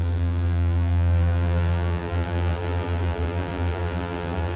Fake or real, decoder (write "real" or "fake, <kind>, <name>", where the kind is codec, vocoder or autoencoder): fake, vocoder, BigVGAN v2